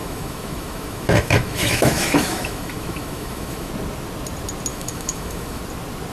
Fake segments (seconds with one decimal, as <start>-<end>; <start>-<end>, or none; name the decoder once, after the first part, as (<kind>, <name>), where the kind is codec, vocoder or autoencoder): 0.0-3.7 (autoencoder, DAC-VAE); 4.7-5.6